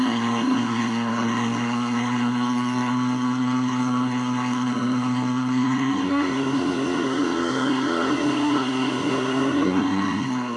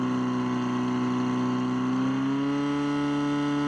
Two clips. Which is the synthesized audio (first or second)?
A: first